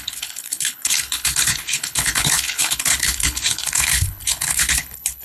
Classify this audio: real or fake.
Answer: fake